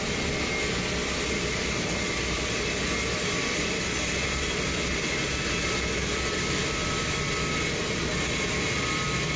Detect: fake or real real